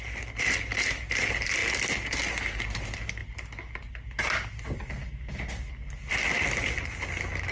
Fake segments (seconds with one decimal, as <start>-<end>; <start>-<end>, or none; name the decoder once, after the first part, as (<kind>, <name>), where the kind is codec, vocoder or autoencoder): none